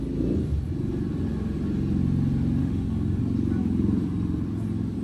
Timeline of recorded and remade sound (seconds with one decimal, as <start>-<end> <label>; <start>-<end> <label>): 0.0-2.6 recorded; 2.6-3.2 remade; 3.2-5.0 recorded